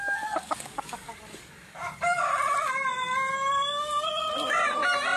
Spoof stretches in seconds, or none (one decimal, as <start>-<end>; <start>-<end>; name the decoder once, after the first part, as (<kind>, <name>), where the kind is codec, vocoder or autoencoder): 0.0-2.3 (codec, DAC)